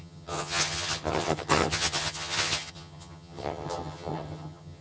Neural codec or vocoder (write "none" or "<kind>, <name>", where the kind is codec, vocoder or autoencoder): vocoder, HiFi-GAN